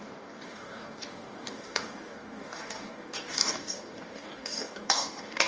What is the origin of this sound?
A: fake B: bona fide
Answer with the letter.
A